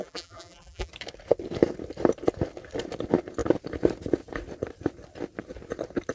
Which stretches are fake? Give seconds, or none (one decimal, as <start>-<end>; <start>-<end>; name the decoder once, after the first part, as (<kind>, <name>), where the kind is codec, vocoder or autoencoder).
0.0-0.9 (vocoder, BigVGAN v2)

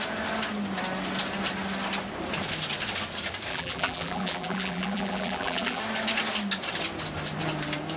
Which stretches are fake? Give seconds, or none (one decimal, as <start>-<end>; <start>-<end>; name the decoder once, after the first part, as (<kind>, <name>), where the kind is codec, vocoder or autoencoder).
3.5-5.8 (vocoder, BigVGAN v2)

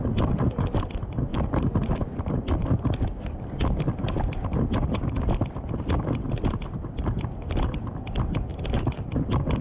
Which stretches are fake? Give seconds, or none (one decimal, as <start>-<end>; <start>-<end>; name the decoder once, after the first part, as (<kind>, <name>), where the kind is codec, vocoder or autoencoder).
1.3-2.7 (vocoder, BigVGAN v2); 8.5-9.1